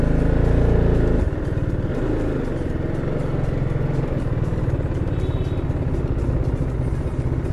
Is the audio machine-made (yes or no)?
no